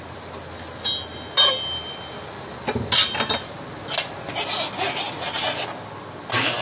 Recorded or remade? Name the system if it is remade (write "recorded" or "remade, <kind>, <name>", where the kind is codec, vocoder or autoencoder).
recorded